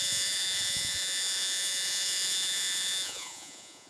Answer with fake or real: fake